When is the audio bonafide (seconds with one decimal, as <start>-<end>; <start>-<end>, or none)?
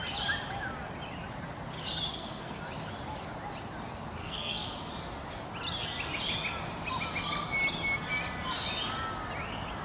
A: 0.0-2.1; 2.6-4.2; 4.9-9.8